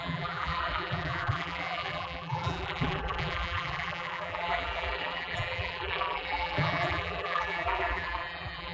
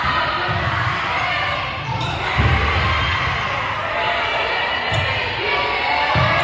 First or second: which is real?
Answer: second